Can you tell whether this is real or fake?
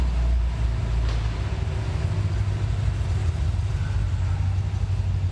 real